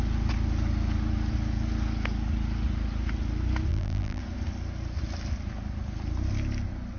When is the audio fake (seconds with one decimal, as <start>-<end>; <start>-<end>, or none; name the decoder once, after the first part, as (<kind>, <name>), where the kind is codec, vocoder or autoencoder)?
3.7-4.2 (vocoder, BigVGAN v2)